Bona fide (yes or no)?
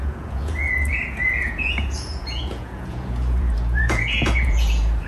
no